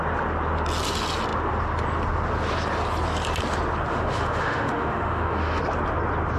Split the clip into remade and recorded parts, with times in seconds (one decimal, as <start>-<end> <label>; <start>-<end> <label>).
0.0-3.9 recorded; 3.9-5.6 remade; 5.6-6.4 recorded